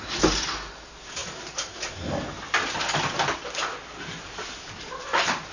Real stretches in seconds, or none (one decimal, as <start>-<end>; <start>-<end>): 0.0-5.5